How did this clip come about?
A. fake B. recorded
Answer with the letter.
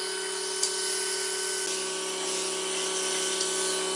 B